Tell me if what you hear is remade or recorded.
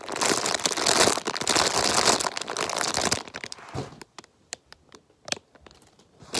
recorded